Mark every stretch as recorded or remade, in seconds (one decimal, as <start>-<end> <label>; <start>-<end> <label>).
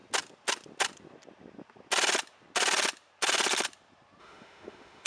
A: 0.0-4.2 recorded; 4.2-5.1 remade